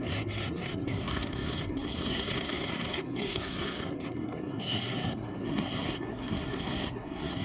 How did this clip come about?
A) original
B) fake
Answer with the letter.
B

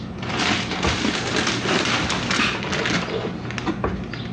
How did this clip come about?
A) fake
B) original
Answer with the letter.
B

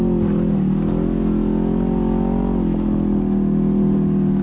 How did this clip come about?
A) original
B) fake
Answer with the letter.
A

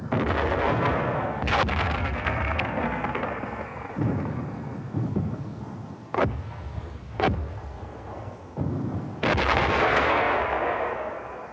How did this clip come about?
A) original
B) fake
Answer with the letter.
B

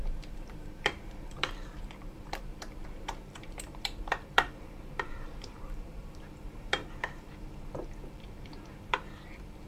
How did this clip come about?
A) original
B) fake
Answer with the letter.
B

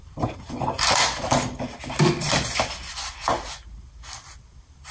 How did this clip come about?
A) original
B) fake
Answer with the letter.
A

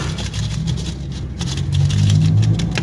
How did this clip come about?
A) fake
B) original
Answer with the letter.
B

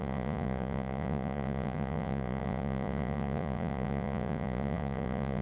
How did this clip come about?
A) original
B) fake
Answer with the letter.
B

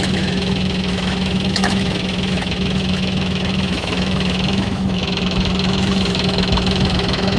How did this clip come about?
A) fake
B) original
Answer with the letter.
A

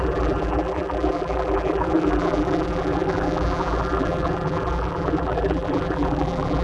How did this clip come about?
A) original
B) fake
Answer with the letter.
B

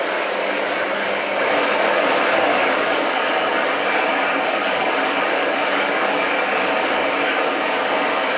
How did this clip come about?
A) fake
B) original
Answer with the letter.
A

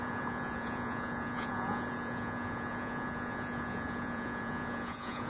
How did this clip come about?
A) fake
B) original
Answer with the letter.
A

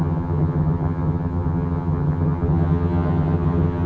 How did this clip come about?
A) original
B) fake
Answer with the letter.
B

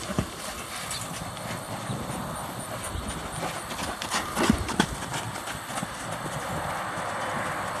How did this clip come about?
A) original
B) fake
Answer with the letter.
A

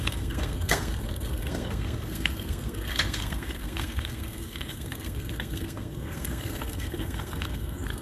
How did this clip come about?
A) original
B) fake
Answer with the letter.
B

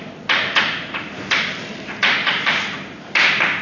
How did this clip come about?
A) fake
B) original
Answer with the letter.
A